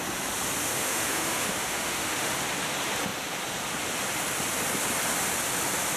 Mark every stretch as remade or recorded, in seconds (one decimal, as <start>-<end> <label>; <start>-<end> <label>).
0.0-0.6 recorded; 0.6-2.3 remade; 2.3-6.0 recorded